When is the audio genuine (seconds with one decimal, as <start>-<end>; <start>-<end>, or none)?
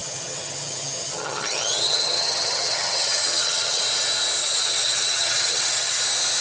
3.8-4.4; 6.0-6.4